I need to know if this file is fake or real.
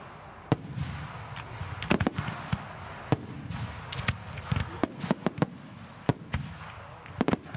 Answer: real